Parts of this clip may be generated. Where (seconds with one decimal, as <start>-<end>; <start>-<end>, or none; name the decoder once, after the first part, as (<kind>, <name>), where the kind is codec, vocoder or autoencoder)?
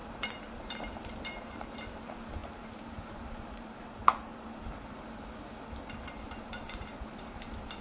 0.0-4.3 (vocoder, BigVGAN v2); 6.4-7.8